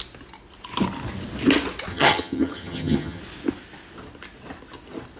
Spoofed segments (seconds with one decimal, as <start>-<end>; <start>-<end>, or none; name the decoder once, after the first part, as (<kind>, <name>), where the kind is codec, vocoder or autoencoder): 1.9-3.2 (vocoder, HiFi-GAN)